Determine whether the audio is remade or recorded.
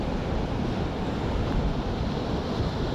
remade